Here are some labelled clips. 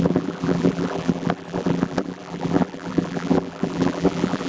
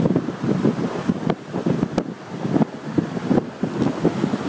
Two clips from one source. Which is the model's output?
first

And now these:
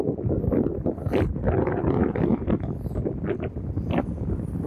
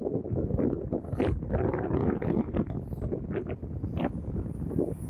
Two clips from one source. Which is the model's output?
first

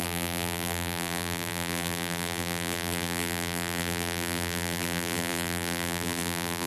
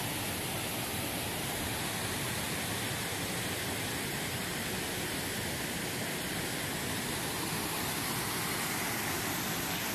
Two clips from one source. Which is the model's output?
first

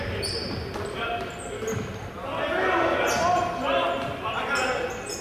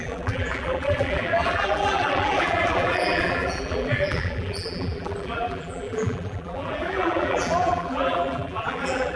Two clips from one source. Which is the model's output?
second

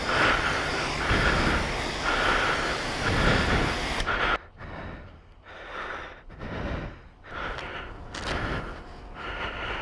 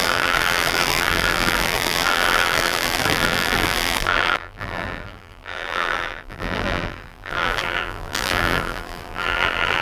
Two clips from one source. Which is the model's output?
second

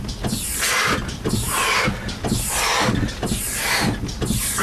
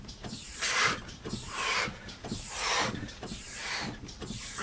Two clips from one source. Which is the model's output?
second